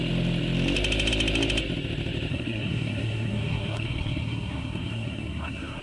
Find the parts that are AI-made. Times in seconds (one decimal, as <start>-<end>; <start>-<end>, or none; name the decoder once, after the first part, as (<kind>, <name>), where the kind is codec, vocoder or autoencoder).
2.3-5.8 (codec, SNAC)